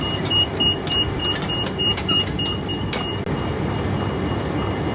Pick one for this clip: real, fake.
real